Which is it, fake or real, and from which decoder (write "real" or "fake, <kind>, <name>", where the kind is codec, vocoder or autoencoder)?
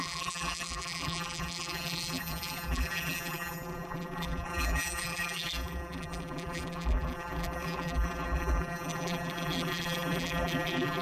fake, vocoder, BigVGAN v2